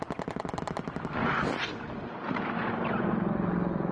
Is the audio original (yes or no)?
yes